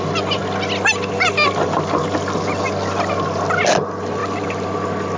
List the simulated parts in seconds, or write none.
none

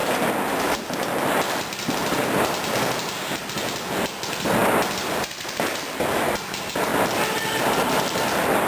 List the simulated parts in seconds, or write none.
none

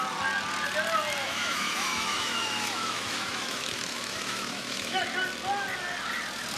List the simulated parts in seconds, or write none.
1.2-5.0 (autoencoder, DAC-VAE)

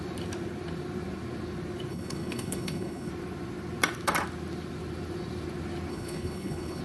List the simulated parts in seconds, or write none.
1.9-3.1 (codec, HILCodec); 5.9-6.8

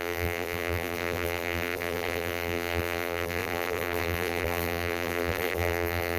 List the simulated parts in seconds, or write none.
0.0-6.2 (vocoder, BigVGAN v2)

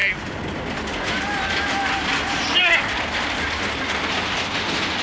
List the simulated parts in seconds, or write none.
none